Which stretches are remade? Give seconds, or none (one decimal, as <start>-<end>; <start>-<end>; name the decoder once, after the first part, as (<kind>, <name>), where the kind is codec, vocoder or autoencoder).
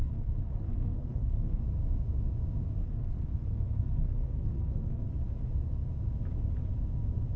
0.0-1.6 (codec, SNAC); 2.8-5.1